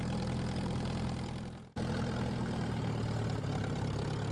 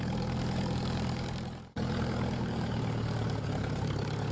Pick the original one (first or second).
first